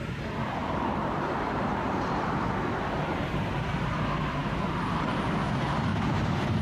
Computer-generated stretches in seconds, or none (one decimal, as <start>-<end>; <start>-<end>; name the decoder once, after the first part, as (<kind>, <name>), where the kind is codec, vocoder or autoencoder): 0.6-2.5 (vocoder, BigVGAN v2); 5.9-6.6